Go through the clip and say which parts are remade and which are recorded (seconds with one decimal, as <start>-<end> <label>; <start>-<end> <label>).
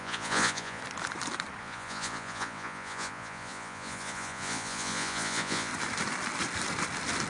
0.0-0.8 remade; 0.8-1.6 recorded; 1.6-5.7 remade; 5.7-7.3 recorded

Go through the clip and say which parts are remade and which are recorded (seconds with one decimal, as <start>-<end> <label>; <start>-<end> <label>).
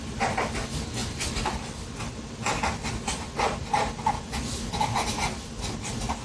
0.0-6.2 recorded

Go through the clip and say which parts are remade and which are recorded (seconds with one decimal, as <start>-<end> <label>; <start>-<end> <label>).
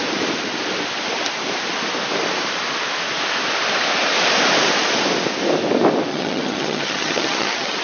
0.0-6.1 recorded; 6.1-7.8 remade